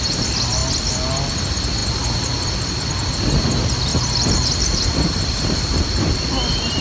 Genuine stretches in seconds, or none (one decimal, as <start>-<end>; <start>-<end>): 0.0-6.8